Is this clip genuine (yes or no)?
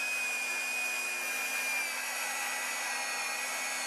yes